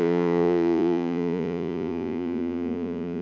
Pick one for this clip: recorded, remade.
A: remade